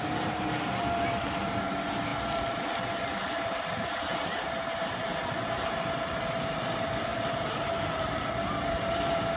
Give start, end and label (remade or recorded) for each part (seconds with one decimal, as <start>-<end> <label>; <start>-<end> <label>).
0.0-9.4 recorded